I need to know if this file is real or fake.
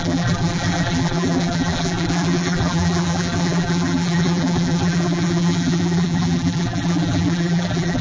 fake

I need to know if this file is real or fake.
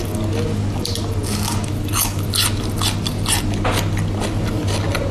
real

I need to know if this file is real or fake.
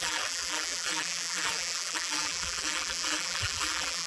fake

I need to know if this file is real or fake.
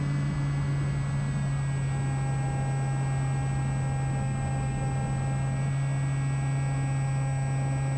real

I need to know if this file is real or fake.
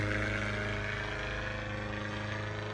real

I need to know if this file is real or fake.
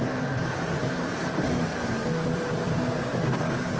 real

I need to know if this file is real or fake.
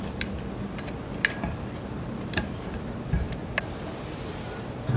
real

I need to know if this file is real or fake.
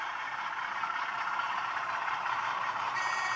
fake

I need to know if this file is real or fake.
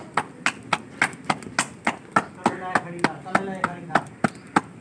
real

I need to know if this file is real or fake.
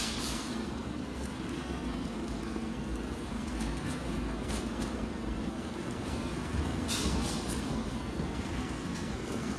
fake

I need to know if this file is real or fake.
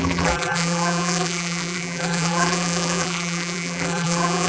fake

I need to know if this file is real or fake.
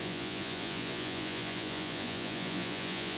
fake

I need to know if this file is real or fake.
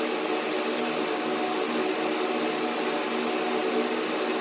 real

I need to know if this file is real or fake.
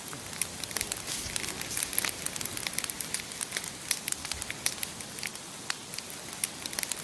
real